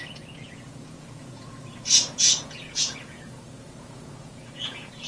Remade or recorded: remade